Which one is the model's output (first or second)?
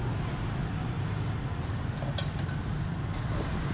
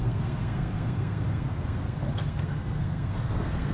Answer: second